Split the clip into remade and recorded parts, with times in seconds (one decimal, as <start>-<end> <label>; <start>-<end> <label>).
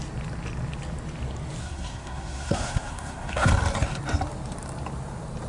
0.0-1.6 recorded; 1.6-3.5 remade; 3.5-5.5 recorded